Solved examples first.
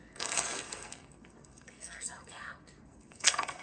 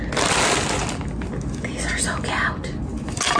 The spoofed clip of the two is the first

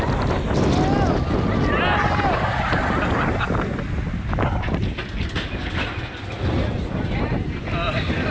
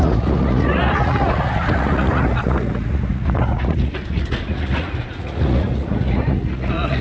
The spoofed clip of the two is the second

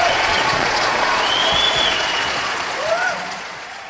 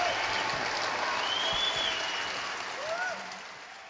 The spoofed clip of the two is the first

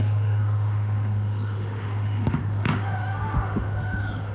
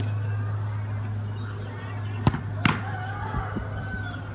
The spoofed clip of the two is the first